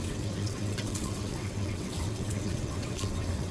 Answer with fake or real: fake